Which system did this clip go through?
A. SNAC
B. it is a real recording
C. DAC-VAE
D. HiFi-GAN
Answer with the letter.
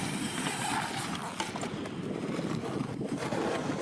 B